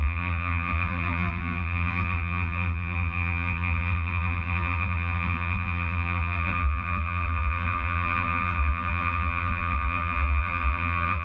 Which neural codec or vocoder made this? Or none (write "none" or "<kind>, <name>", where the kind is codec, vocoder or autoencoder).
vocoder, BigVGAN v2